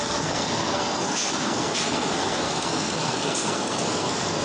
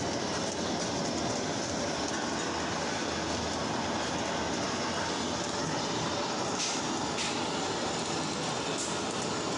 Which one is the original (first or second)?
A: second